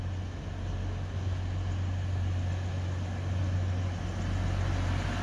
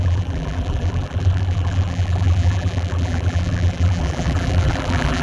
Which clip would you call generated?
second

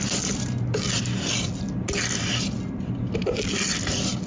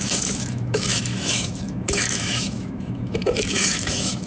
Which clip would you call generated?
second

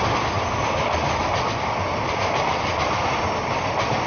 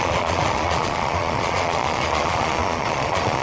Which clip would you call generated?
second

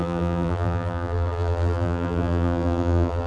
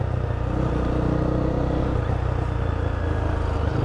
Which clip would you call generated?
first